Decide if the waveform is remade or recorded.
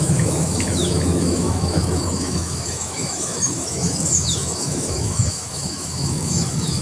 remade